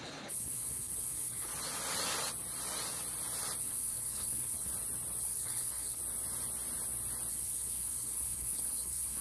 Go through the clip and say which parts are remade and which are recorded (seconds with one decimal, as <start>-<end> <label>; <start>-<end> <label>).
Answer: 0.0-1.5 remade; 1.5-3.6 recorded; 3.6-4.7 remade; 4.7-5.2 recorded; 5.2-6.0 remade; 6.0-7.3 recorded; 7.3-9.2 remade